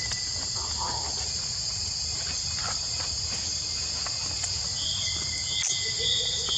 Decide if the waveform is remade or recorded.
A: recorded